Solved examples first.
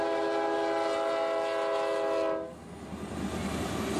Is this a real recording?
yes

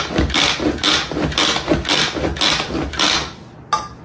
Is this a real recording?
yes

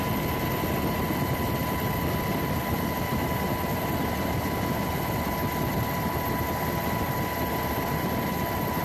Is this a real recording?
yes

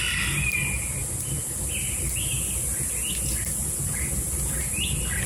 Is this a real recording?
yes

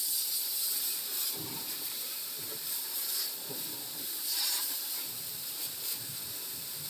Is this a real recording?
no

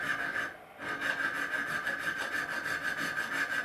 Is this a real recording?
yes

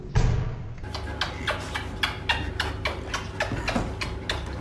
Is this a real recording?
yes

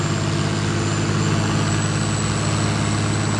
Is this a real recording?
yes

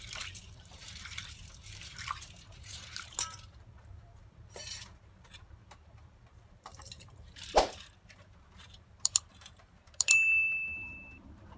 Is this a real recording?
no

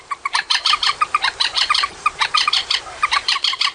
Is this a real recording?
no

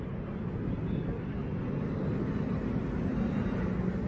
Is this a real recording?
yes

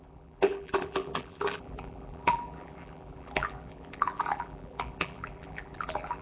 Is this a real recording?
no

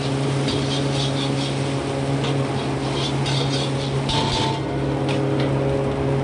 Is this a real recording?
yes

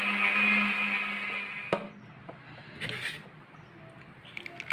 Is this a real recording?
yes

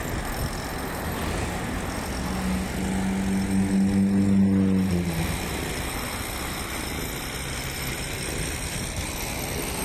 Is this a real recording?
yes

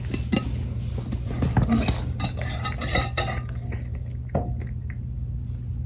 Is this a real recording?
yes